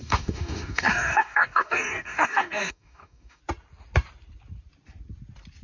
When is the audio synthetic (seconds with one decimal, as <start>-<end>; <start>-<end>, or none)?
0.0-3.4